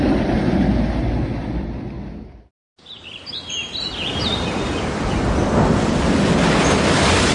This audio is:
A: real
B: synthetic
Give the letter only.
A